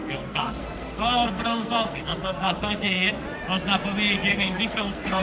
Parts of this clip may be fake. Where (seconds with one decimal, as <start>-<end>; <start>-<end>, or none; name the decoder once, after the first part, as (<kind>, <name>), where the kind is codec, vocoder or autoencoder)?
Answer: 0.0-3.1 (codec, SNAC); 4.3-5.2